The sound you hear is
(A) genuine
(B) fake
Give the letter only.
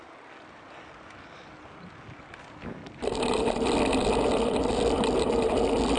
A